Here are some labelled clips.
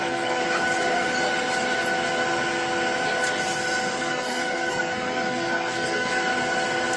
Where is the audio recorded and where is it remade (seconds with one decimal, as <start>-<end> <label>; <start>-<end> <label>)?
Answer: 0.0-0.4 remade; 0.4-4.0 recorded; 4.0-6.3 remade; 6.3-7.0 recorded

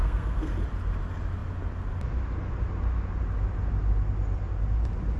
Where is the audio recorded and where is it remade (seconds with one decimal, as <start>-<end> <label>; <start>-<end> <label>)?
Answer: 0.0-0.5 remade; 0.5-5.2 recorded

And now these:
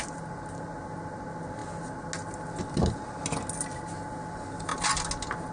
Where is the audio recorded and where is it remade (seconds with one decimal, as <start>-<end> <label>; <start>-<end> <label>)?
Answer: 0.0-5.5 recorded

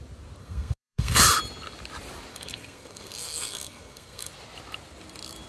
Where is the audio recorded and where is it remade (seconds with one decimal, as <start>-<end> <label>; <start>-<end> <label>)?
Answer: 0.0-0.4 recorded; 0.4-1.2 remade; 1.2-2.3 recorded; 2.3-4.3 remade; 4.3-5.5 recorded